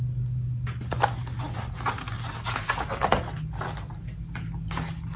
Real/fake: real